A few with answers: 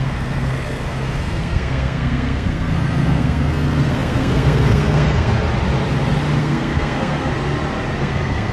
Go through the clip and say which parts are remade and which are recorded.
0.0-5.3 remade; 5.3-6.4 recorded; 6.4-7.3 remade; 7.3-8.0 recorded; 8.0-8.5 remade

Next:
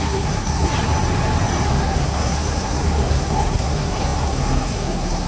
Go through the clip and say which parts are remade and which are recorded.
0.0-0.7 remade; 0.7-1.7 recorded; 1.7-5.3 remade

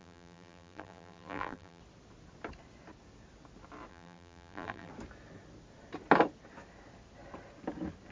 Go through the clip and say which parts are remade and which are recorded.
0.0-1.8 remade; 1.8-3.9 recorded; 3.9-4.9 remade; 4.9-8.1 recorded

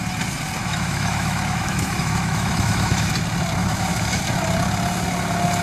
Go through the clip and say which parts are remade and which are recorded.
0.0-0.6 recorded; 0.6-3.1 remade; 3.1-3.6 recorded; 3.6-4.2 remade; 4.2-5.6 recorded

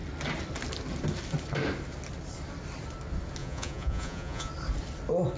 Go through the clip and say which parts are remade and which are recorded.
0.0-3.4 recorded; 3.4-4.5 remade; 4.5-5.4 recorded

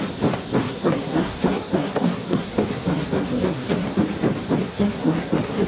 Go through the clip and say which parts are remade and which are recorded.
0.0-0.6 recorded; 0.6-4.0 remade; 4.0-4.6 recorded; 4.6-5.7 remade

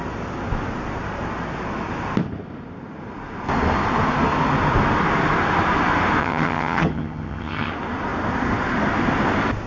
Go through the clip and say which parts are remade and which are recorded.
0.0-6.2 recorded; 6.2-7.7 remade; 7.7-9.7 recorded